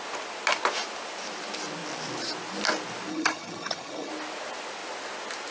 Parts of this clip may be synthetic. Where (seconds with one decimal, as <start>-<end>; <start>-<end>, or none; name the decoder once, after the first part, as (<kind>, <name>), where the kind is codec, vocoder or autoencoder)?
3.1-4.1 (vocoder, HiFi-GAN)